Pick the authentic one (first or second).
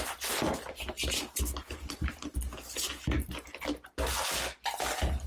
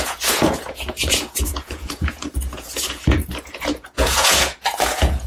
first